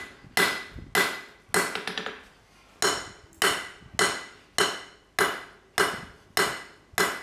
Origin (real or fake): real